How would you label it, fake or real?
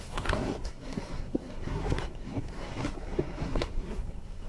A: fake